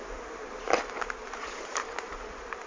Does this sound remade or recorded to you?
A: remade